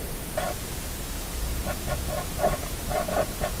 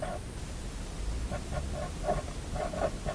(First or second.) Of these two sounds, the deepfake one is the first